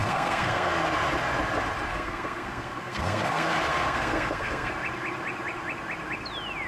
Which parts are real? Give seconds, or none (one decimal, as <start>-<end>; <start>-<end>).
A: 0.7-1.9; 4.7-6.7